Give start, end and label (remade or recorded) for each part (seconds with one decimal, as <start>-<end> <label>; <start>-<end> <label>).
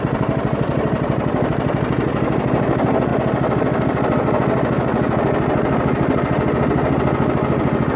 0.0-3.1 remade; 3.1-8.0 recorded